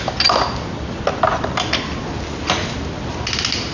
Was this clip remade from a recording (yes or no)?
no